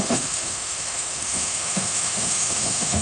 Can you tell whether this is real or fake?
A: fake